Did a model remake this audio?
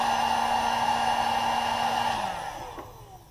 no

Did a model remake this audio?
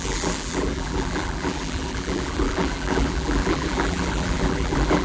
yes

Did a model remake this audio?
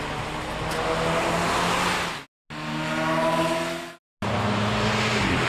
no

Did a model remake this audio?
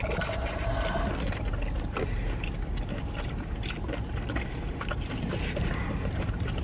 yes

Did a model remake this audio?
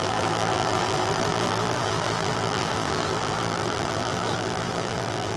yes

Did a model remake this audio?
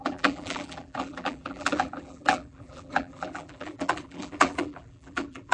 yes